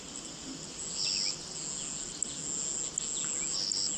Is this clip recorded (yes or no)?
yes